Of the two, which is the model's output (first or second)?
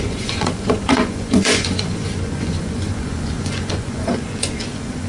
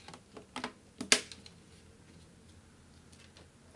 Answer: first